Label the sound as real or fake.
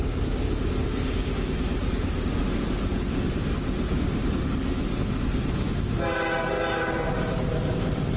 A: real